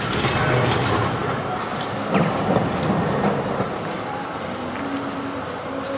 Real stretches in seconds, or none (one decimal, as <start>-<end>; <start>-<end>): 0.0-6.0